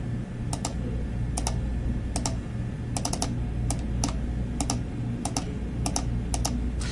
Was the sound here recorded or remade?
recorded